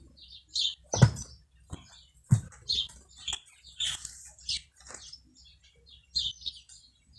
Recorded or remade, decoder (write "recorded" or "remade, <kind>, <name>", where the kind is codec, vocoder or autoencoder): recorded